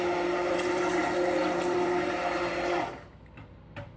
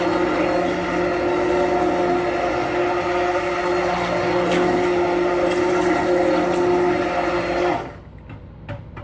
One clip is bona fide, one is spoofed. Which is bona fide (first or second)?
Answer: second